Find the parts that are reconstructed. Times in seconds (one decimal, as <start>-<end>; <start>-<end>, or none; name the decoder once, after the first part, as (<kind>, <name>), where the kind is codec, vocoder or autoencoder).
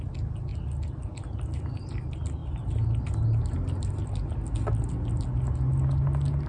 none